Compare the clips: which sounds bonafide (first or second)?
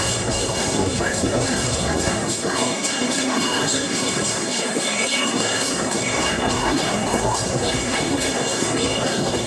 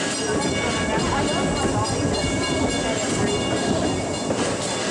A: second